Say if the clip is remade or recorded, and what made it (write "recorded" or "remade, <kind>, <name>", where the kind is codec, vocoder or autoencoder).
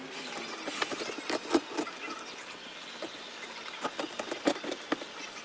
recorded